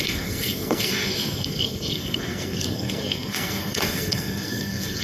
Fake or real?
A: fake